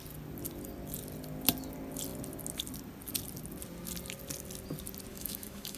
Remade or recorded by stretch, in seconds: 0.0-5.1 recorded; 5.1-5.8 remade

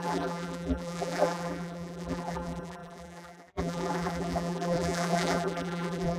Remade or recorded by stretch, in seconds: 0.0-6.2 remade

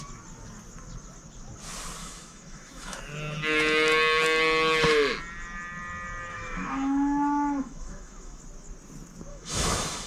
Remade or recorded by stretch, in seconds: 0.0-2.0 recorded; 2.0-3.0 remade; 3.0-6.3 recorded; 6.3-8.4 remade; 8.4-9.3 recorded; 9.3-10.1 remade